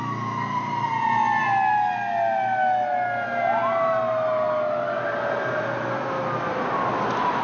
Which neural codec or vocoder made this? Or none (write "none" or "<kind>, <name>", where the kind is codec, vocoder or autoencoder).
none